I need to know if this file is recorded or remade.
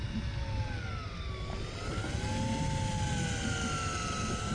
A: recorded